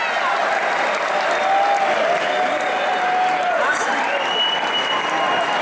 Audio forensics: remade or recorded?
recorded